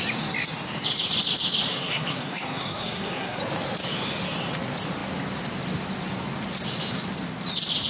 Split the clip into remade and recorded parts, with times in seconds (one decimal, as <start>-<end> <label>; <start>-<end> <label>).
0.0-1.7 recorded; 1.7-3.4 remade; 3.4-7.9 recorded